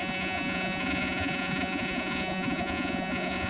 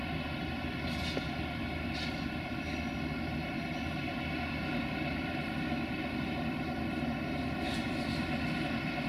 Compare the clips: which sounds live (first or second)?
second